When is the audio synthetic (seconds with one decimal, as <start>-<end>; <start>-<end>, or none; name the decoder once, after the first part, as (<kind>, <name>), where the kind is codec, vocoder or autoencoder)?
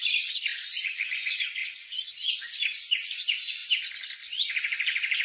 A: 0.5-1.1 (vocoder, Vocos); 1.6-2.4